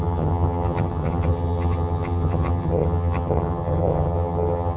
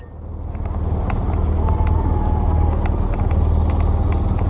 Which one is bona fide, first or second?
second